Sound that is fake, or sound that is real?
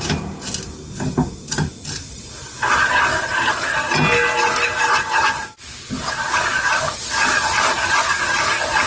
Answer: real